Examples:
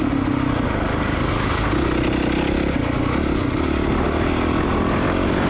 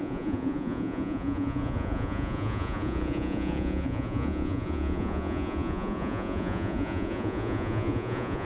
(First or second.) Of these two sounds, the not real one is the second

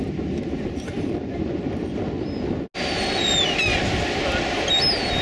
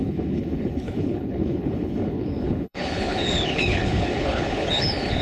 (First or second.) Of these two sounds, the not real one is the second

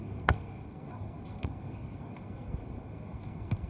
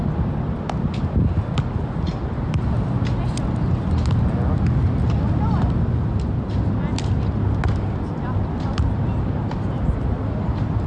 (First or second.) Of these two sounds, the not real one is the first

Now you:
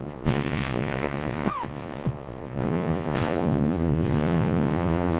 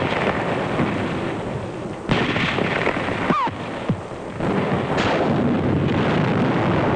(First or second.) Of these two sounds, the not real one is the first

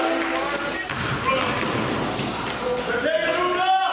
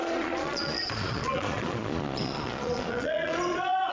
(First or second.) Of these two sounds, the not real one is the second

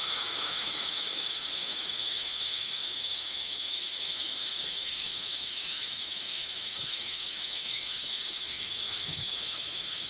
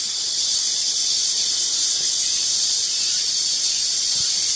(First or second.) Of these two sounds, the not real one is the first